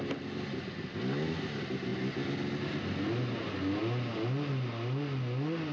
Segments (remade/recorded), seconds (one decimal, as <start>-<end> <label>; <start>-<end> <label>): 0.0-5.7 recorded